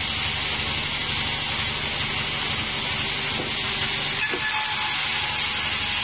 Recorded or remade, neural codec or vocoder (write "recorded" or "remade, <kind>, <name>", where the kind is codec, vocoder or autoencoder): recorded